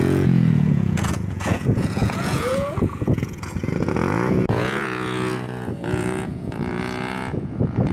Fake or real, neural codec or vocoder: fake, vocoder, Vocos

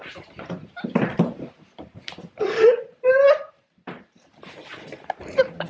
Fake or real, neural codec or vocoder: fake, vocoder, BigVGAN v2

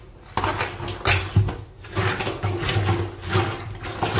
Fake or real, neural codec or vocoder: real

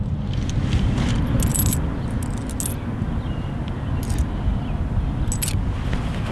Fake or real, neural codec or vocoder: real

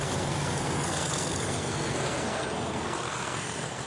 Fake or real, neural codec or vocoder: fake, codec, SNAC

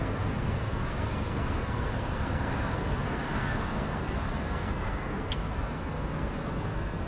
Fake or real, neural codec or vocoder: fake, codec, SNAC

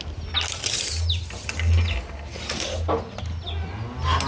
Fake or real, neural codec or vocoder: real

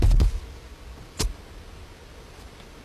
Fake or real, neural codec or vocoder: real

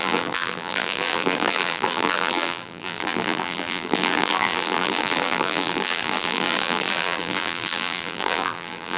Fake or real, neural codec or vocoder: fake, vocoder, BigVGAN v2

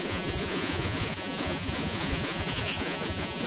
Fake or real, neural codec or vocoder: fake, vocoder, Vocos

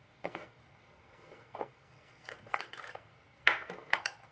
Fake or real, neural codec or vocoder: fake, codec, SNAC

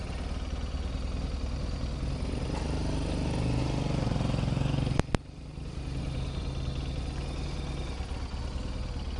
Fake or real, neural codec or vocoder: real